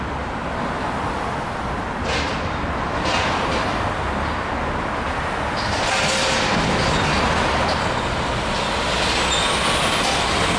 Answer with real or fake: real